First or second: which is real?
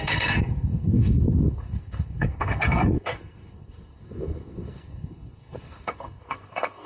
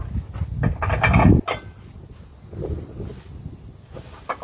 second